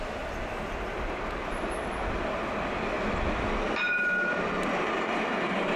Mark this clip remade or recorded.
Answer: recorded